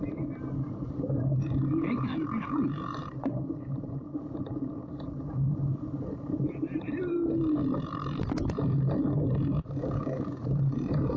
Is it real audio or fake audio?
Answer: fake